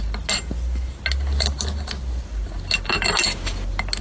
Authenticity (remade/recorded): recorded